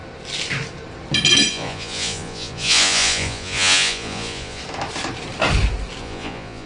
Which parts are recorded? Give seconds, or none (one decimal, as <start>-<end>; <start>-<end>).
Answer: 0.0-1.5; 4.6-6.0